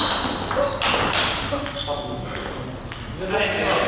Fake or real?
real